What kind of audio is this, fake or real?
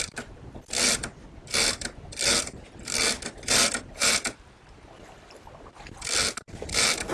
real